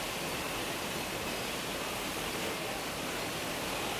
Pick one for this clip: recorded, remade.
recorded